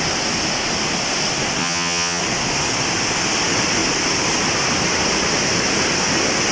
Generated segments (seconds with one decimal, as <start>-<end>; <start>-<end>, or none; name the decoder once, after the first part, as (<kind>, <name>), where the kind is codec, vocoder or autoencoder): 1.6-2.2 (vocoder, HiFi-GAN)